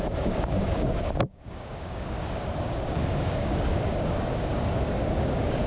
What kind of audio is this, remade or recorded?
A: remade